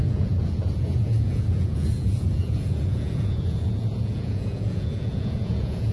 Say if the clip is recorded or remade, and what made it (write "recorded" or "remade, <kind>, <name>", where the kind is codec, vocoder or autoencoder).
remade, vocoder, Vocos